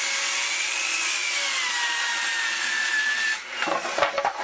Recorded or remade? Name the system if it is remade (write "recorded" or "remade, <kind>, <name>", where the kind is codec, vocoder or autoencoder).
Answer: recorded